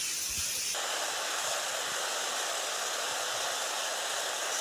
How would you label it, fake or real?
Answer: real